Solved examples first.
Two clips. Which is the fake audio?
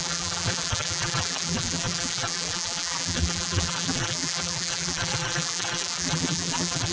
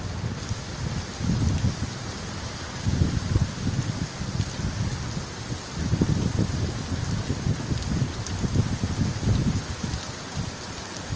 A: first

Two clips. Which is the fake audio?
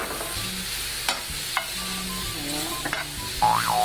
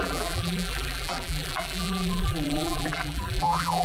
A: second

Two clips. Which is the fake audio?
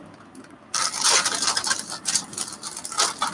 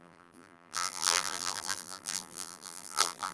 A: second